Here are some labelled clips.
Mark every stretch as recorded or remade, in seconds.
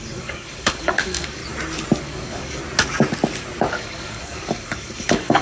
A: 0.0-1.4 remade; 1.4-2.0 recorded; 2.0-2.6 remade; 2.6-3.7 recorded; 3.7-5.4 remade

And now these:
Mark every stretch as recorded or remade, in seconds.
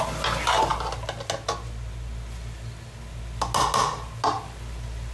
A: 0.0-5.1 recorded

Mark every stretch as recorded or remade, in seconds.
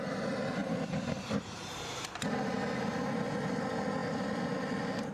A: 0.0-0.6 recorded; 0.6-2.1 remade; 2.1-5.1 recorded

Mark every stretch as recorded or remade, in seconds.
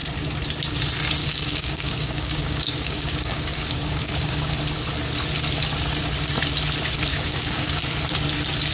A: 0.0-1.2 recorded; 1.2-4.5 remade; 4.5-7.1 recorded; 7.1-7.8 remade; 7.8-8.7 recorded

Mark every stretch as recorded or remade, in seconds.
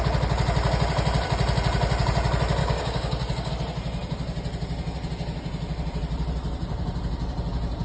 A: 0.0-2.6 recorded; 2.6-3.5 remade; 3.5-7.8 recorded